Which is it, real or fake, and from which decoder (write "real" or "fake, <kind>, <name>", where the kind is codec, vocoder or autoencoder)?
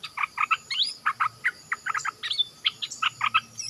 fake, vocoder, BigVGAN v2